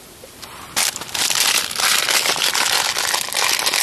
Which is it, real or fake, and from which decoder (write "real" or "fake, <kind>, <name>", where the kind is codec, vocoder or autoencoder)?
real